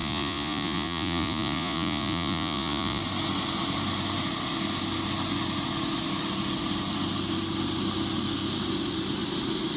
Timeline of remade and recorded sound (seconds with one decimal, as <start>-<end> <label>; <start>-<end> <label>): 0.0-3.0 remade; 3.0-9.8 recorded